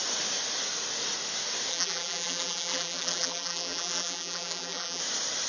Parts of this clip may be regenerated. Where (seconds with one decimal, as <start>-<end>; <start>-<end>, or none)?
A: 1.7-5.0